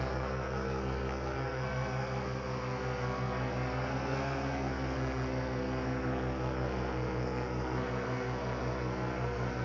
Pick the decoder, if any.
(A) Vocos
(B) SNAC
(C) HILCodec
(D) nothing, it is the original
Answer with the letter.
B